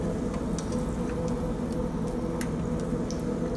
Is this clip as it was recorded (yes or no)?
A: yes